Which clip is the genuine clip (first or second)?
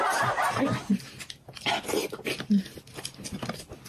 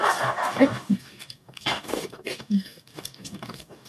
first